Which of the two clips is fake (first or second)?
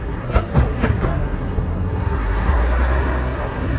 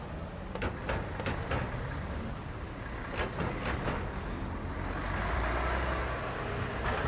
first